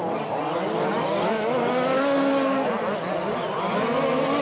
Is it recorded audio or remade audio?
recorded